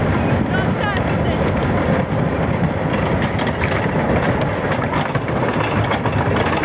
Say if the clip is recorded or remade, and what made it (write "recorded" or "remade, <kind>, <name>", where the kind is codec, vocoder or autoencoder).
recorded